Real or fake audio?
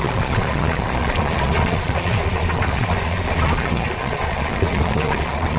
fake